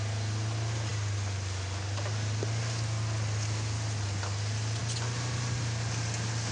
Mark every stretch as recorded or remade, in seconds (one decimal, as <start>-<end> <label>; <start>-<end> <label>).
0.0-6.5 recorded